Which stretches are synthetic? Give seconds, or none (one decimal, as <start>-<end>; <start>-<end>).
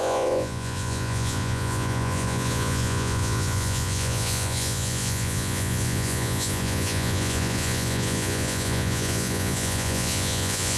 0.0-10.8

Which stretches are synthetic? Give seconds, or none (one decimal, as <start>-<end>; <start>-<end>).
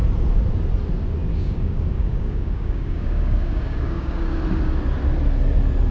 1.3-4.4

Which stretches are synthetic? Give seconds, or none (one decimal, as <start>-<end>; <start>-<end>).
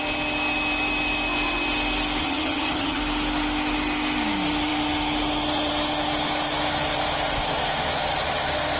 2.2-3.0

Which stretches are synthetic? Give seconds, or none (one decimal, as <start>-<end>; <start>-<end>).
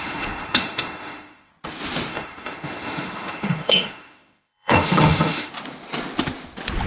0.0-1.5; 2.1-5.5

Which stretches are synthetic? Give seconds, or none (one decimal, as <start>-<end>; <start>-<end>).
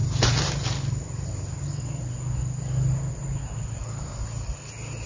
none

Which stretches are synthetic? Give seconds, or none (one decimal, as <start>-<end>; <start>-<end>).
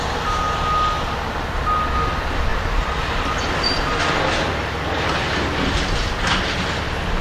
none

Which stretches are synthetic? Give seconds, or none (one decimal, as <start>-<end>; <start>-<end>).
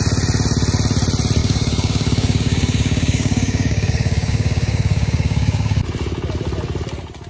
1.4-5.8